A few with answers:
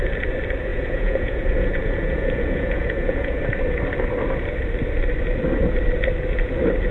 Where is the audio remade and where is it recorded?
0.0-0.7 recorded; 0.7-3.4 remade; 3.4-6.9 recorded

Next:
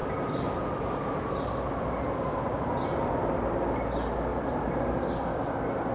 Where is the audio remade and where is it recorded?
0.0-1.8 remade; 1.8-4.3 recorded; 4.3-5.1 remade; 5.1-5.9 recorded